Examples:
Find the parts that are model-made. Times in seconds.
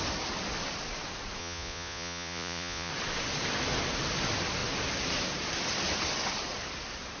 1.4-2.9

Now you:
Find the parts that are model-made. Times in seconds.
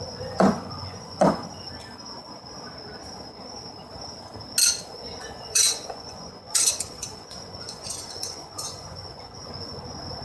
0.0-1.4; 4.9-10.2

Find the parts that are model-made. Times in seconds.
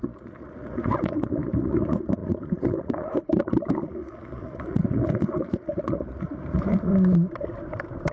0.0-6.9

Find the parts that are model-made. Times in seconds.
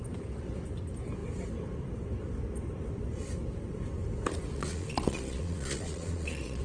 4.5-6.6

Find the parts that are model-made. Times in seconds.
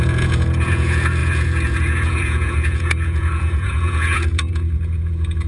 0.0-5.5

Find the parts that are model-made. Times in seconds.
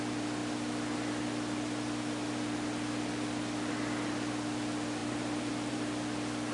none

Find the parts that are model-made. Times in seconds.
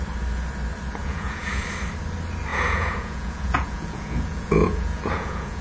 1.0-1.6; 2.5-5.6